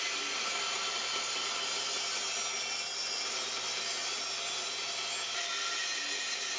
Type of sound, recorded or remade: recorded